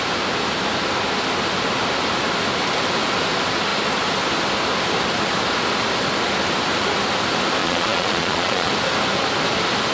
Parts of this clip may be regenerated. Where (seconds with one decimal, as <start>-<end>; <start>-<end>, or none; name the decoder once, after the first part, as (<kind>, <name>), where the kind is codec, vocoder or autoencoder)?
7.6-8.7 (vocoder, Vocos)